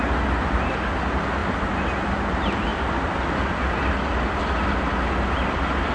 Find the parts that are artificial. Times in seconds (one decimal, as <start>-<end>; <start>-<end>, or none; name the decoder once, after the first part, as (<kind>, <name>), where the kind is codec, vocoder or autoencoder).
none